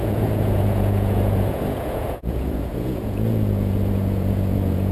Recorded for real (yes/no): no